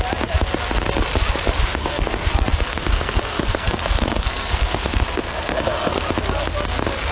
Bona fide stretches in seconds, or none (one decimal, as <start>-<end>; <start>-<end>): 0.0-1.8; 6.1-7.1